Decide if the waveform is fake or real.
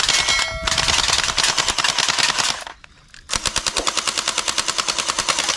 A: real